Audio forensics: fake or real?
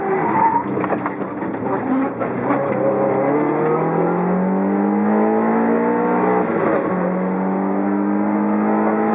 real